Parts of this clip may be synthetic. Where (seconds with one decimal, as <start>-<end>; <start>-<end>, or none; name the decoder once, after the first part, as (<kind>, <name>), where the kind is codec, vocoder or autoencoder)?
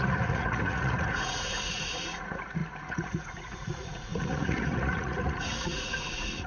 0.0-6.5 (vocoder, Vocos)